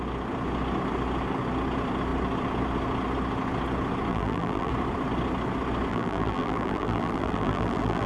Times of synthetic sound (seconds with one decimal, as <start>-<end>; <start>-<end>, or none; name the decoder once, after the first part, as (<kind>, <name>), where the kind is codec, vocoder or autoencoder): 4.1-4.7 (vocoder, BigVGAN v2); 5.9-8.1